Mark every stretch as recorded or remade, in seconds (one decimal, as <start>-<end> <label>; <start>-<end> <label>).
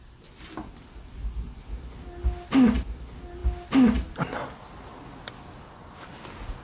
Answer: 0.0-6.6 recorded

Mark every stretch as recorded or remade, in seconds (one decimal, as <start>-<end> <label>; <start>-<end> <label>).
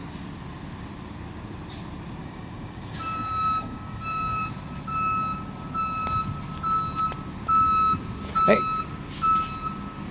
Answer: 0.0-2.2 recorded; 2.2-4.4 remade; 4.4-10.1 recorded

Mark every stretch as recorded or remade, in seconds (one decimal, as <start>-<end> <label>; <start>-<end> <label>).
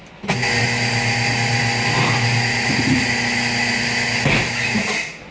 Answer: 0.0-5.3 recorded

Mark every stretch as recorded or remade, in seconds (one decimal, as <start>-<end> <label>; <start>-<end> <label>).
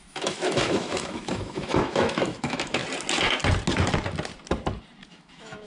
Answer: 0.0-2.8 remade; 2.8-5.1 recorded; 5.1-5.7 remade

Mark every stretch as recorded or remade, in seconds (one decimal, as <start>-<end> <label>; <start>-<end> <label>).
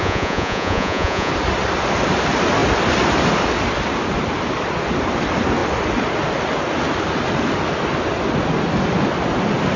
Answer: 0.0-1.3 remade; 1.3-9.8 recorded